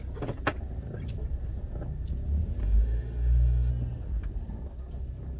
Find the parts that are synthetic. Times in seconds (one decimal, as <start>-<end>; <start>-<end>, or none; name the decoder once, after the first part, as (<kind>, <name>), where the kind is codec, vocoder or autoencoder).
2.6-3.7 (autoencoder, DAC-VAE)